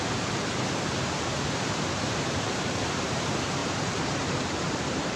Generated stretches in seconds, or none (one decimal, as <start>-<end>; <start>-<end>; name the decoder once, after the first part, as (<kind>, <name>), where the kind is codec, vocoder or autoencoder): 0.0-5.2 (vocoder, BigVGAN v2)